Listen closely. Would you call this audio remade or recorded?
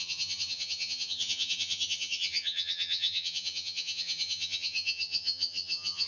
remade